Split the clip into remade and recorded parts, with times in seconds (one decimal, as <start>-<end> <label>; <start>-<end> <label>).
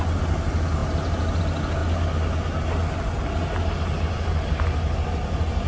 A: 0.0-5.7 recorded